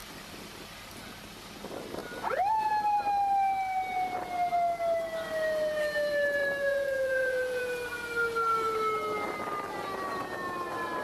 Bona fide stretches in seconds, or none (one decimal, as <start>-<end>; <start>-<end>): 0.0-6.4; 7.6-11.0